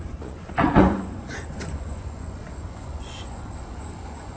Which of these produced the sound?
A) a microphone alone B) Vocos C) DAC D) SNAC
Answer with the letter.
B